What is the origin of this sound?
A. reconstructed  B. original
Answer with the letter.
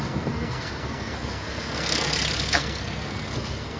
A